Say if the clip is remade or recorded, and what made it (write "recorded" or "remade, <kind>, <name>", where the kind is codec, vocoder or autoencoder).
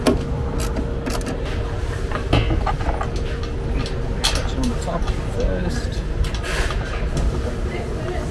recorded